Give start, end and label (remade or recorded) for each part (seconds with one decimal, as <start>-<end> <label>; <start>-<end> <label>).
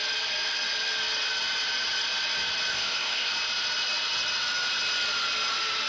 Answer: 0.0-2.7 recorded; 2.7-3.3 remade; 3.3-5.9 recorded